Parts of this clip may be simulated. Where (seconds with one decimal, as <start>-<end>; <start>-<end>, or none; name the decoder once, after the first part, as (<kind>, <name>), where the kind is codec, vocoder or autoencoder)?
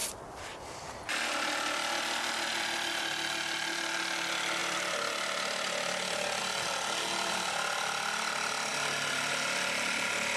4.6-6.4 (vocoder, BigVGAN v2)